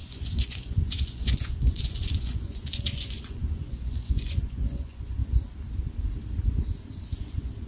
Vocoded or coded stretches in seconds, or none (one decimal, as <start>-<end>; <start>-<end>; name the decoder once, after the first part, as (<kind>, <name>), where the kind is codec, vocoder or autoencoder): 0.0-5.2 (vocoder, Vocos); 7.2-7.7